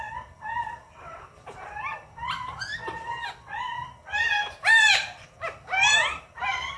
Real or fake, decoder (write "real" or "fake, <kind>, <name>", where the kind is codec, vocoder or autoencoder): fake, vocoder, BigVGAN v2